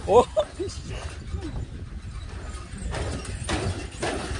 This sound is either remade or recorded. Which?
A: recorded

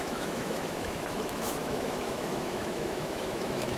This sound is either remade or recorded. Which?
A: remade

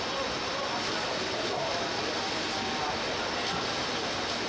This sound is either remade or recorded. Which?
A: recorded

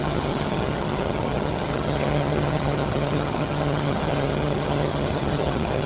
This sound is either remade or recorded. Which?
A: remade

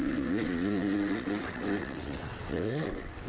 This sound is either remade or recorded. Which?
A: remade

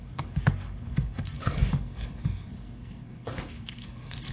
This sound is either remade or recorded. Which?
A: remade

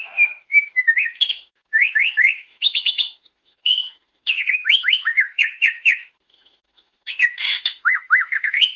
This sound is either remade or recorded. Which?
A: remade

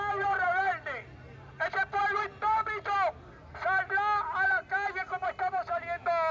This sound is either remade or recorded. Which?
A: recorded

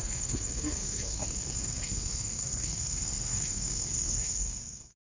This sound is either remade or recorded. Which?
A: remade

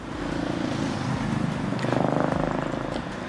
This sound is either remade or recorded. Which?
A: recorded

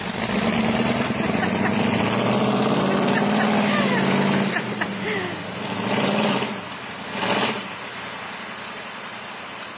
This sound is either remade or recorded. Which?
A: remade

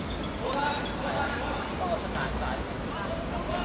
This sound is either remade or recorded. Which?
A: recorded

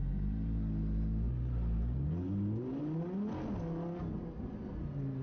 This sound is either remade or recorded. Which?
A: recorded